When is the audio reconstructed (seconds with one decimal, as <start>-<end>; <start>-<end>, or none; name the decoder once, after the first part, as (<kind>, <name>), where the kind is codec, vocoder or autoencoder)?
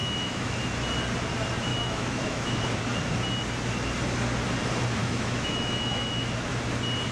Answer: 0.0-0.6 (autoencoder, DAC-VAE); 1.7-2.6; 5.0-6.5